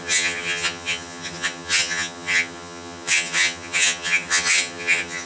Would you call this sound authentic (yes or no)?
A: no